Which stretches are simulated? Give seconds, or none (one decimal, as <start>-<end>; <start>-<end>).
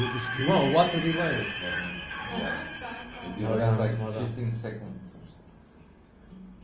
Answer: 0.0-0.4; 1.6-2.7; 5.6-6.6